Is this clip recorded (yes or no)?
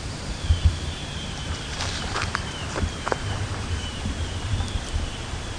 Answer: no